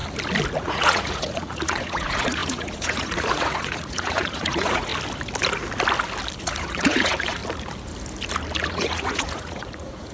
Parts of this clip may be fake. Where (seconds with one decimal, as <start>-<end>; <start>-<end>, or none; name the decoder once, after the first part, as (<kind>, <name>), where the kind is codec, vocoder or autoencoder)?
0.6-4.9 (vocoder, Vocos); 6.4-7.4; 8.7-10.1